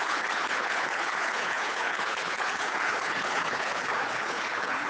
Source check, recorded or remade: remade